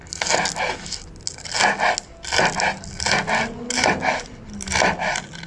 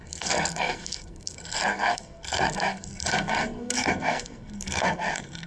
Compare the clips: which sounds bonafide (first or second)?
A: first